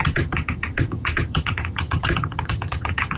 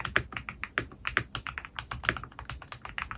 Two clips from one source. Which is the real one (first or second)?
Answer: second